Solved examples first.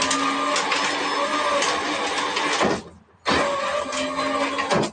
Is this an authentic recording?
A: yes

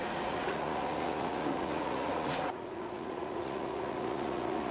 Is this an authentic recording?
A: no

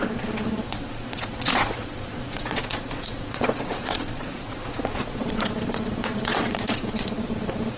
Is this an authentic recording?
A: no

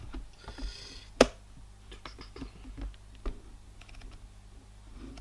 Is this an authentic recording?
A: yes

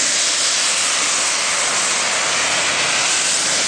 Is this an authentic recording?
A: yes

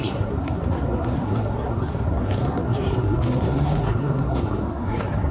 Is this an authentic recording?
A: no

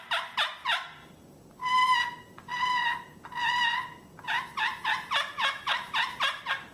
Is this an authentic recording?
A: yes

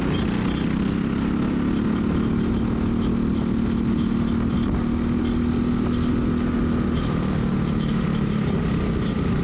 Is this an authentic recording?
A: yes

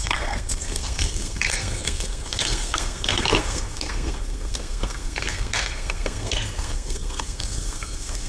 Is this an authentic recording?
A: no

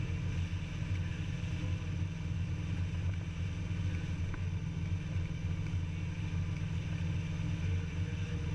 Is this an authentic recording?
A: yes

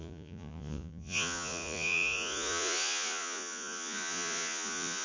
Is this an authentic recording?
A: no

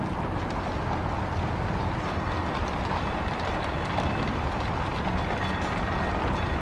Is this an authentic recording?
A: yes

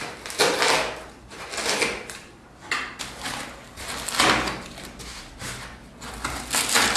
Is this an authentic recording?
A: yes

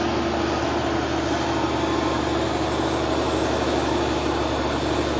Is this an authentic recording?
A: yes